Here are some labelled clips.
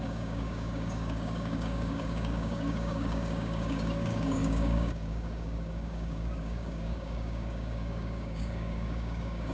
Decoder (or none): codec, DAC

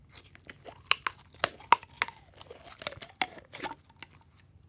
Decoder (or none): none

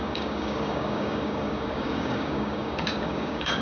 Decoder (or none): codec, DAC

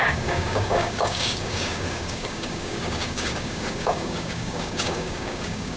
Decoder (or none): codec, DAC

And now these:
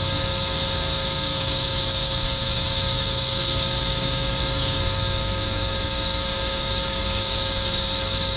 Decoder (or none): codec, DAC